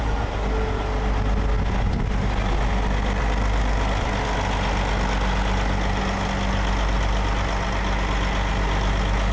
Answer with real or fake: real